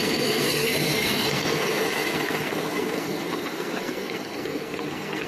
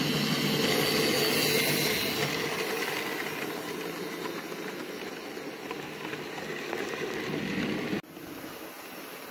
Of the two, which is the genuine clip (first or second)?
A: second